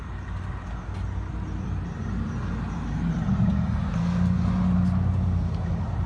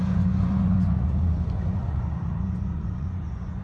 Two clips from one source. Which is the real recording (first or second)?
first